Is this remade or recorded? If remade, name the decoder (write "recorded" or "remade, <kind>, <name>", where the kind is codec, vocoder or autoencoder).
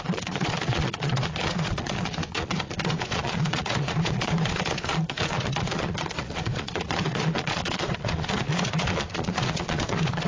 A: remade, vocoder, Vocos